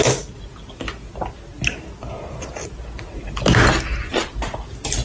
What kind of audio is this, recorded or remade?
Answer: recorded